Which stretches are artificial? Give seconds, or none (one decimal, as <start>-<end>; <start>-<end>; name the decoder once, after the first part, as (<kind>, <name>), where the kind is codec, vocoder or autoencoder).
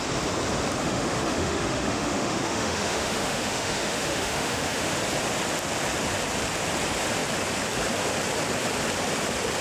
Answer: 0.8-4.9 (autoencoder, DAC-VAE)